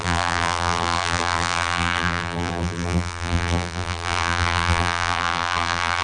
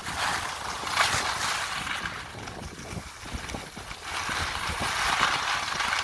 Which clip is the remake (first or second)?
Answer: first